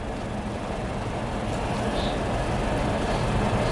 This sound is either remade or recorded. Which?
recorded